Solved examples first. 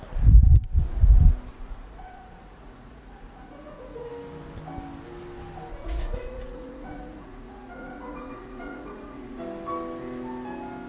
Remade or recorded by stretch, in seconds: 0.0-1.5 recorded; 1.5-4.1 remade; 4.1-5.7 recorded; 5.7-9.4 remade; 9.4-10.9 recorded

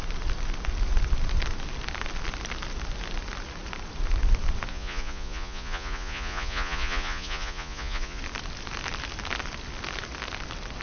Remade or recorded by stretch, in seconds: 0.0-4.7 recorded; 4.7-8.2 remade; 8.2-10.8 recorded

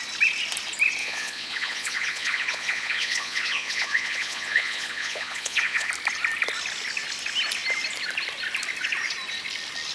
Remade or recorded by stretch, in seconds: 0.0-1.0 recorded; 1.0-5.9 remade; 5.9-9.9 recorded

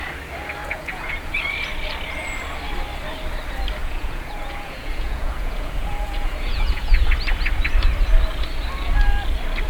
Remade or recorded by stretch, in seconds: 0.0-0.6 recorded; 0.6-1.4 remade; 1.4-3.8 recorded; 3.8-6.9 remade; 6.9-9.7 recorded

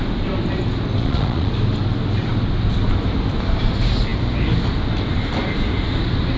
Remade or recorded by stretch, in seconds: 0.0-1.0 recorded; 1.0-1.5 remade; 1.5-6.4 recorded

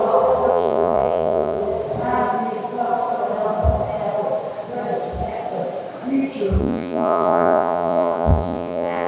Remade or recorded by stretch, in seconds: 0.0-0.5 recorded; 0.5-1.6 remade; 1.6-6.6 recorded; 6.6-9.1 remade

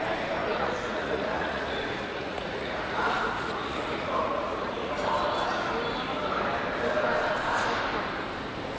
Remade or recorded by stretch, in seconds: 0.0-0.4 recorded; 0.4-5.1 remade; 5.1-8.8 recorded

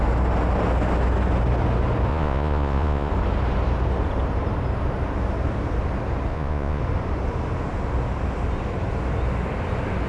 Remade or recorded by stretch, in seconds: 0.0-2.1 recorded; 2.1-3.1 remade; 3.1-6.3 recorded; 6.3-6.8 remade; 6.8-10.1 recorded